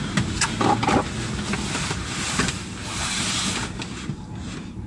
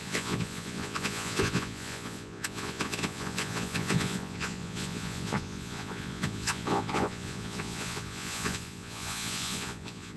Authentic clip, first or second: first